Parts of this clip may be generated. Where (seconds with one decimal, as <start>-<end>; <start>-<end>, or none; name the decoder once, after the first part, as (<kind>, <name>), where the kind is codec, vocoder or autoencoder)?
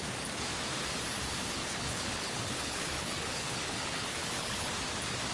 1.5-4.7 (codec, HILCodec)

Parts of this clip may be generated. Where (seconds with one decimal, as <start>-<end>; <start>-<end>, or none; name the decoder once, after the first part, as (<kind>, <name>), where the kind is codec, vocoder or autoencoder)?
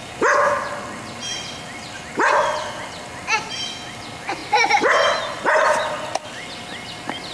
none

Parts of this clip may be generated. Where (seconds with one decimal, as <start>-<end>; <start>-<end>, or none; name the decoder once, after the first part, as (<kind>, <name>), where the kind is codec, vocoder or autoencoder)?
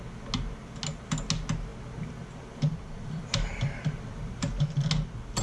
1.7-4.6 (vocoder, BigVGAN v2)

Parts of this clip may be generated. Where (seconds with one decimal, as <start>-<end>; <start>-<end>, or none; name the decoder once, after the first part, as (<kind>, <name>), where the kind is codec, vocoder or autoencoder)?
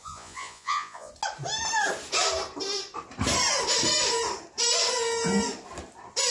0.0-1.1 (vocoder, Vocos)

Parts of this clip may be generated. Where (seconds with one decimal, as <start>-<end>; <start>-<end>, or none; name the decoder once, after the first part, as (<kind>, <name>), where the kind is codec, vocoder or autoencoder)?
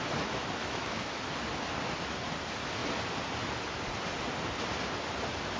0.6-1.2 (autoencoder, DAC-VAE)